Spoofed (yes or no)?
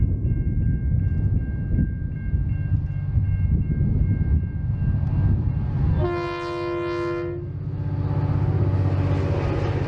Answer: no